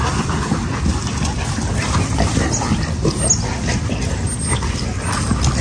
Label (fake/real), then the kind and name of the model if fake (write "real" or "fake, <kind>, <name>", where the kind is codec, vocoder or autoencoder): real